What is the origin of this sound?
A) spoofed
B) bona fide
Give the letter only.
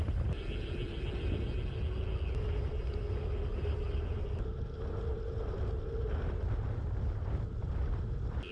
B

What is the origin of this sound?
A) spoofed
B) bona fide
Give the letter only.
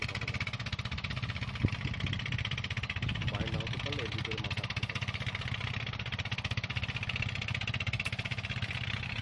B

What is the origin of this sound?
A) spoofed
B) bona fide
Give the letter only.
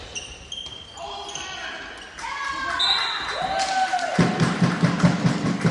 B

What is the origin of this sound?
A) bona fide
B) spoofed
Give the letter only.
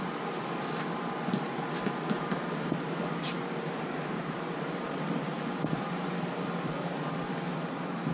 B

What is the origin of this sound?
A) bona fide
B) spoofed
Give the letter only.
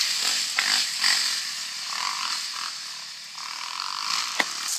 B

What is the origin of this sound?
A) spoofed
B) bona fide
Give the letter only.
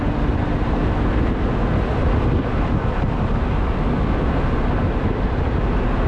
B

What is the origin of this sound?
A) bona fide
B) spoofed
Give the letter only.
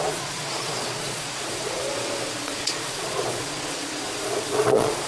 B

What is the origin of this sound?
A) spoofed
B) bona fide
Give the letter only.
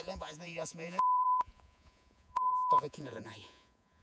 A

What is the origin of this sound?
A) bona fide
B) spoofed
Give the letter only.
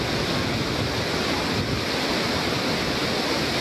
A